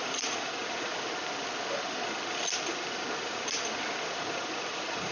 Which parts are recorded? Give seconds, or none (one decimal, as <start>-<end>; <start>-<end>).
0.9-4.0

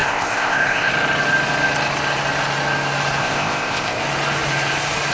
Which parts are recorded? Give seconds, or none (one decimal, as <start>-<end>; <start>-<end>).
0.9-3.2; 4.0-5.1

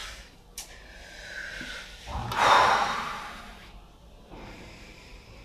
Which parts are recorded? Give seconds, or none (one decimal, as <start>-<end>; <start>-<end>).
none